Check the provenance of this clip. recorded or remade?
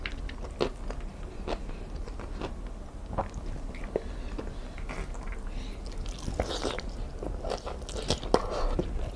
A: recorded